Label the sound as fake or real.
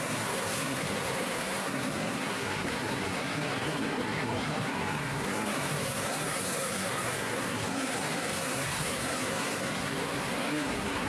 fake